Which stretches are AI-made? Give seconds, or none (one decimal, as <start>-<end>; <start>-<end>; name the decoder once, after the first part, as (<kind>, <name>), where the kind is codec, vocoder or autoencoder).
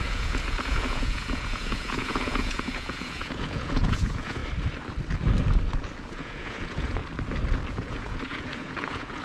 0.0-4.4 (vocoder, Vocos); 6.0-7.0; 7.7-9.2